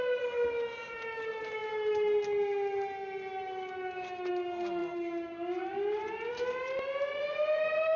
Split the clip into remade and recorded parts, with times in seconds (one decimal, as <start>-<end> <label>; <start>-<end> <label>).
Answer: 0.0-8.0 recorded